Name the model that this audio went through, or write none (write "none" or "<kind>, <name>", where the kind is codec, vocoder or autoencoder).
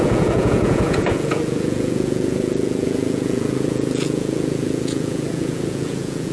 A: vocoder, Vocos